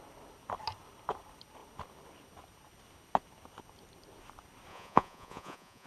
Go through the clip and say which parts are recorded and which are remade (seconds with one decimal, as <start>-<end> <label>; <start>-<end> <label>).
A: 0.0-4.7 recorded; 4.7-5.9 remade